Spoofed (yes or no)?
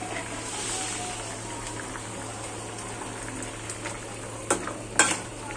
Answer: no